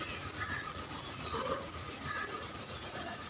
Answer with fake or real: fake